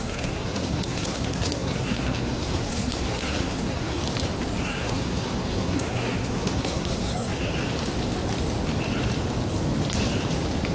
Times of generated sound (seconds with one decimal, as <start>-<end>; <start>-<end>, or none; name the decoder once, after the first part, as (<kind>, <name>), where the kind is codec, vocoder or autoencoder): 0.0-4.0 (codec, SNAC); 4.6-7.5